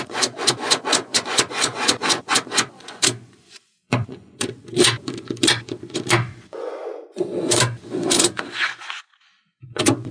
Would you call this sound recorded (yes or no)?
no